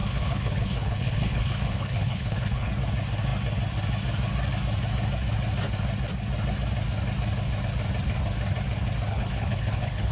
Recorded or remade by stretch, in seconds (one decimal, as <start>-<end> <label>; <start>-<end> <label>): 0.0-2.7 remade; 2.7-9.1 recorded; 9.1-10.1 remade